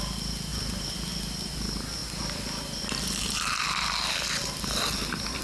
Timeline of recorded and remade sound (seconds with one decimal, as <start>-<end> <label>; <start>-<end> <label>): 0.0-0.5 recorded; 0.5-1.1 remade; 1.1-5.4 recorded

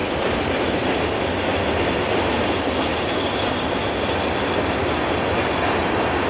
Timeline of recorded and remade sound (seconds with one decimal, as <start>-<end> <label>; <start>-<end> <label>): 0.0-1.0 remade; 1.0-2.9 recorded; 2.9-3.9 remade; 3.9-6.3 recorded